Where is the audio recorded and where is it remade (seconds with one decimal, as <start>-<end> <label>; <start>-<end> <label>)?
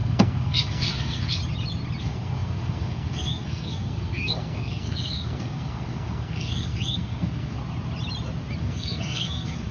0.0-1.4 remade; 1.4-2.0 recorded; 2.0-7.6 remade; 7.6-8.6 recorded; 8.6-9.7 remade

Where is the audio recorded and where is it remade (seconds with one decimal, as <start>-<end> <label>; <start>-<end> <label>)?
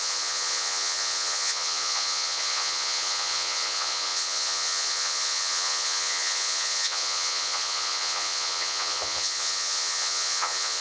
0.0-10.8 remade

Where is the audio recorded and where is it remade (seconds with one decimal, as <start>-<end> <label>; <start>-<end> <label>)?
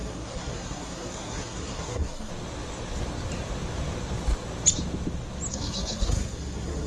0.0-2.3 remade; 2.3-5.5 recorded; 5.5-6.9 remade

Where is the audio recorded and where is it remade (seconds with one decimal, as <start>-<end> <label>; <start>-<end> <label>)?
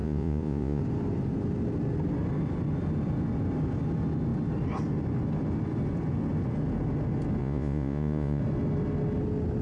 0.0-0.8 remade; 0.8-7.4 recorded; 7.4-8.4 remade; 8.4-9.6 recorded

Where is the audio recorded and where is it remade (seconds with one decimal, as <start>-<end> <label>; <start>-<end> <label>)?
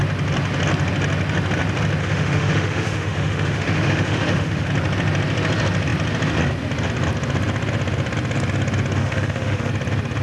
0.0-2.0 recorded; 2.0-4.7 remade; 4.7-9.0 recorded; 9.0-9.7 remade; 9.7-10.2 recorded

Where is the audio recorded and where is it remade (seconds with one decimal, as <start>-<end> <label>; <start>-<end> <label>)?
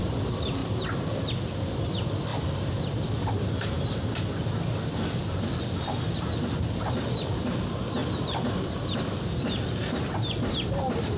0.0-11.2 recorded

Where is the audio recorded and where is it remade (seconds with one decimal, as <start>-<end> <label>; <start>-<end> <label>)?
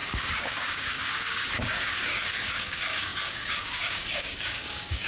0.0-5.1 remade